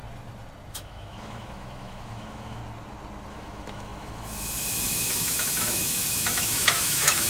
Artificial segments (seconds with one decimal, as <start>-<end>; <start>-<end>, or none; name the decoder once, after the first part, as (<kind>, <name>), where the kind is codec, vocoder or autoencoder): 0.7-2.6 (autoencoder, DAC-VAE); 3.3-7.3